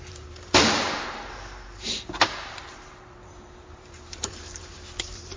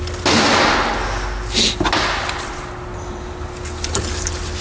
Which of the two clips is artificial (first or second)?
first